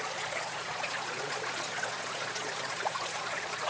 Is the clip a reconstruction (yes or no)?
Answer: yes